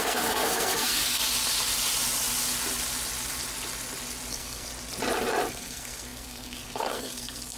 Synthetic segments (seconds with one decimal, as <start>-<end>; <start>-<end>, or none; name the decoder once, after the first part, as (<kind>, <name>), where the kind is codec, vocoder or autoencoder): 0.0-1.2 (codec, SNAC); 4.3-4.7; 5.5-7.6